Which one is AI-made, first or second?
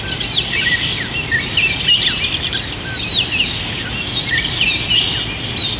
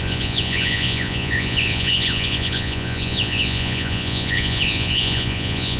second